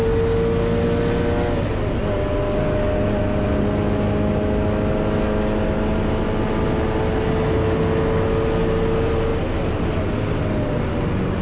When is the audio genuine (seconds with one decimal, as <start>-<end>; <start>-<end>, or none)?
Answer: 0.0-11.4